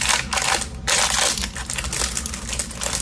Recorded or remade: recorded